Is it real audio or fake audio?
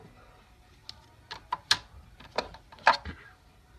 real